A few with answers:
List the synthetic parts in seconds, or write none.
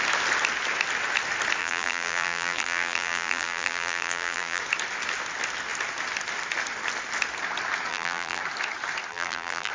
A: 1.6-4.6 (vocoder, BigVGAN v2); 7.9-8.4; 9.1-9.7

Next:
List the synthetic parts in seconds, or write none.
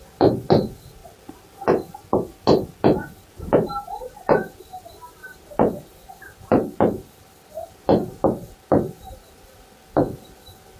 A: 5.2-9.4 (vocoder, BigVGAN v2)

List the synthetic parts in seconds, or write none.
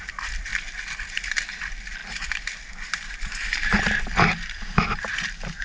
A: none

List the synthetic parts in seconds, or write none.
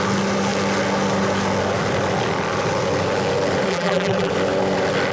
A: 3.7-4.3 (vocoder, BigVGAN v2)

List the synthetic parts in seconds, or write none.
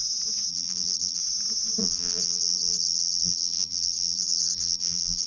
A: 0.5-1.2 (vocoder, BigVGAN v2); 1.8-5.3